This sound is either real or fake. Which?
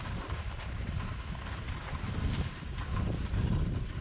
real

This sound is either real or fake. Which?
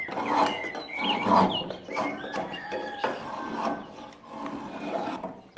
real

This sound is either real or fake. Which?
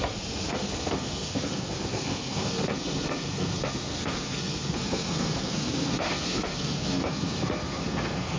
fake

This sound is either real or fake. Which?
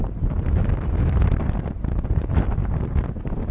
real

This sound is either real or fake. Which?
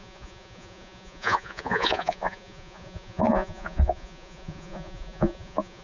fake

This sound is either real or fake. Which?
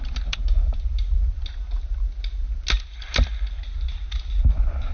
real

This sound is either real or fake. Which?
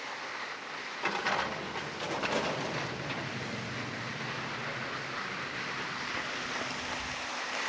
real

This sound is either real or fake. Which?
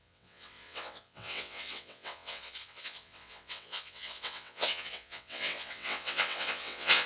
fake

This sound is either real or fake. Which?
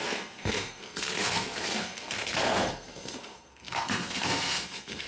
fake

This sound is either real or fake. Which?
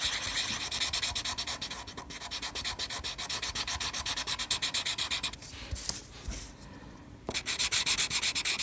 real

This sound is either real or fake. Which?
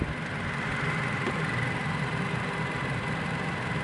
real